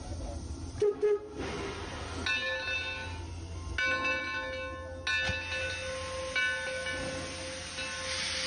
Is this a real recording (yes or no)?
yes